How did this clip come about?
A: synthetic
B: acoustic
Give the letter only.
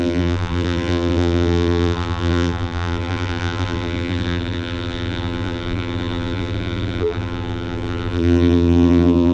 A